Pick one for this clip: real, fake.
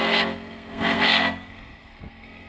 fake